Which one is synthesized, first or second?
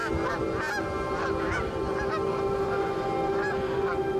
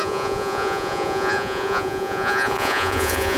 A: second